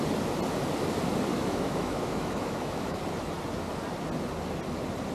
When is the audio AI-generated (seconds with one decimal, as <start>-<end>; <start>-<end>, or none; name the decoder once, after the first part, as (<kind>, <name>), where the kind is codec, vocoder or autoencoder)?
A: 1.3-3.0 (autoencoder, DAC-VAE)